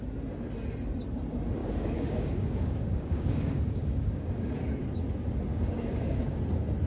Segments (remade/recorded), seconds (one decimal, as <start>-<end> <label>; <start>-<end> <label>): 0.0-1.6 recorded; 1.6-4.5 remade; 4.5-5.5 recorded; 5.5-6.4 remade; 6.4-6.9 recorded